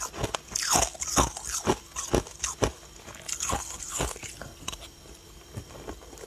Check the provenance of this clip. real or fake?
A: real